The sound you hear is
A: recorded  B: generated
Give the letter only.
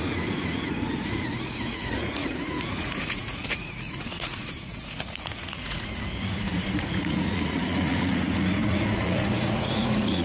B